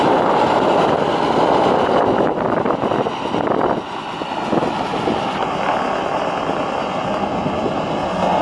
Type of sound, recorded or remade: recorded